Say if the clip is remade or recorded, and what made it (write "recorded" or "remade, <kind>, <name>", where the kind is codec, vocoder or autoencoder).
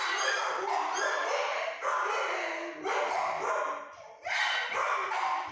recorded